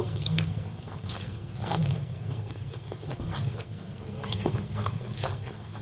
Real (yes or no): no